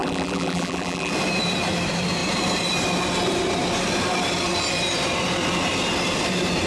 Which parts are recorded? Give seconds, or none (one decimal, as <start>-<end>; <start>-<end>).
1.1-6.7